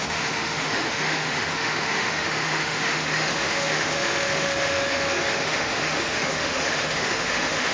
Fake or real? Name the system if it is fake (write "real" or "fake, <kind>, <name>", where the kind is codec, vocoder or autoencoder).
fake, autoencoder, DAC-VAE